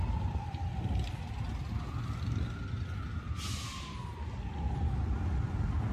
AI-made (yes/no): no